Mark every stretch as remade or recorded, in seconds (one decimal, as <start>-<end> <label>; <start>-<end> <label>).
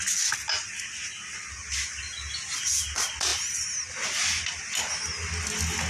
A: 0.0-5.9 recorded